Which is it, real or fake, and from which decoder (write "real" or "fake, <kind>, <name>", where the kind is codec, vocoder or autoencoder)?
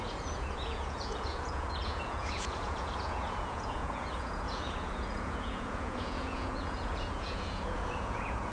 fake, vocoder, Vocos